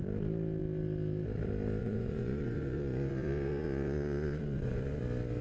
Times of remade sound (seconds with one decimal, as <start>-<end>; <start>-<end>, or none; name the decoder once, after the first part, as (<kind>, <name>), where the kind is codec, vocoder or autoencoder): 1.8-5.0 (vocoder, Vocos)